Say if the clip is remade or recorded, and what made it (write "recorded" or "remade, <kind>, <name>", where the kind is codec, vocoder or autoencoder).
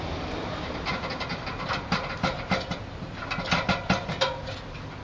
recorded